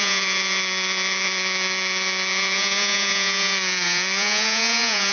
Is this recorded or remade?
remade